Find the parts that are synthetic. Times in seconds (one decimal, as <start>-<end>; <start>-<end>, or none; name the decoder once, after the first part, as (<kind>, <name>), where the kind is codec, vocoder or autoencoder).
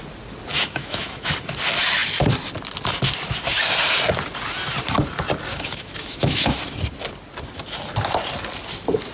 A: 0.5-1.3 (autoencoder, DAC-VAE); 5.5-6.6